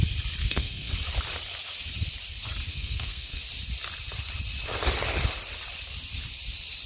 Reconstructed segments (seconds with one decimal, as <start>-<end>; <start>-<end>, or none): 0.4-0.9; 2.7-3.4

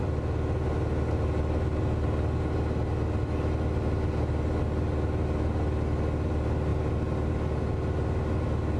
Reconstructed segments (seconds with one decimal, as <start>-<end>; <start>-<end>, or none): none

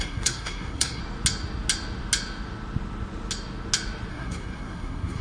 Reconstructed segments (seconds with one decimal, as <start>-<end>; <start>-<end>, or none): 0.0-1.0; 4.1-5.2

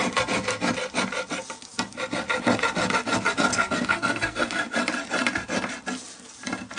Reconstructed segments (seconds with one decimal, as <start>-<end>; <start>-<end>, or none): 3.5-4.8